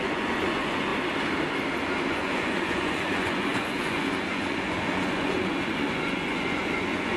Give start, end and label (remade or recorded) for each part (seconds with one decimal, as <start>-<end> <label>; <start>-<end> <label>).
0.0-0.9 remade; 0.9-2.1 recorded; 2.1-7.2 remade

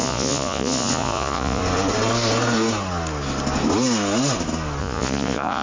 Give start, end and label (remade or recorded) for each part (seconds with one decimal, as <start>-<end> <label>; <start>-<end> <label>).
0.0-1.6 remade; 1.6-4.8 recorded; 4.8-5.6 remade

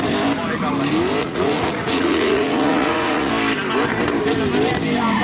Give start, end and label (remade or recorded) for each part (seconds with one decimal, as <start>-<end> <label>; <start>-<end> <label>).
0.0-1.2 recorded; 1.2-3.3 remade; 3.3-5.2 recorded

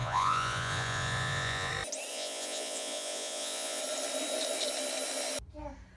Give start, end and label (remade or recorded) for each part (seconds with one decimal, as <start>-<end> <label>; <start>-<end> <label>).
0.0-1.7 remade; 1.7-2.1 recorded; 2.1-3.8 remade; 3.8-6.0 recorded

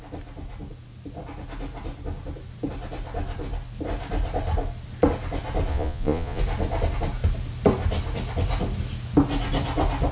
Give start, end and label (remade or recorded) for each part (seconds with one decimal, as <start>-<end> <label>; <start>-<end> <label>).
0.0-5.7 recorded; 5.7-6.4 remade; 6.4-10.1 recorded

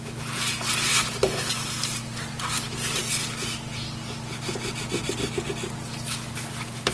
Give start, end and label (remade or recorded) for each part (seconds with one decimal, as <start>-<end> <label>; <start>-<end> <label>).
0.0-6.9 recorded

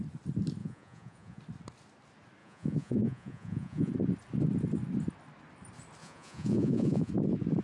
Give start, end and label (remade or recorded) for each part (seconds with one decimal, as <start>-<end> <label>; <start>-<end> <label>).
0.0-0.6 recorded; 0.6-1.4 remade; 1.4-2.4 recorded; 2.4-3.9 remade; 3.9-6.0 recorded; 6.0-7.1 remade; 7.1-7.6 recorded